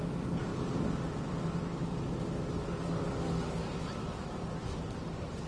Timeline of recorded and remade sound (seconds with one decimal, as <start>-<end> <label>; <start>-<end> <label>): 0.0-0.5 remade; 0.5-3.8 recorded; 3.8-5.5 remade